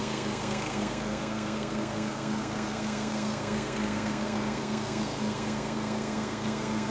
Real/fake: fake